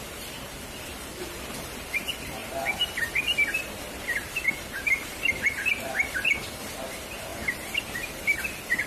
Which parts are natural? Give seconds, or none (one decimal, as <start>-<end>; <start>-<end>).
none